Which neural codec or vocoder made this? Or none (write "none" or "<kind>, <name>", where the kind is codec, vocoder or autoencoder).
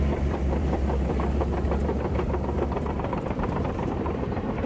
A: vocoder, BigVGAN v2